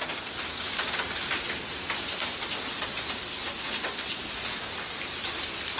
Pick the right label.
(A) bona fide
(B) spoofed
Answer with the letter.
A